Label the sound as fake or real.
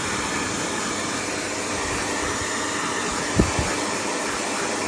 real